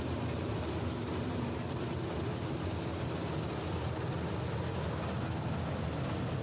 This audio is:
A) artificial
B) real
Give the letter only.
B